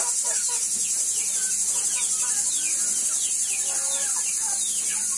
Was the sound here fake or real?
real